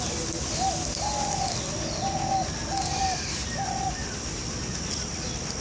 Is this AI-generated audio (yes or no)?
no